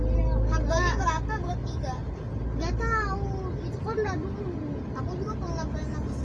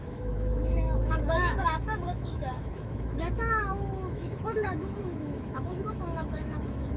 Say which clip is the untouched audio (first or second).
first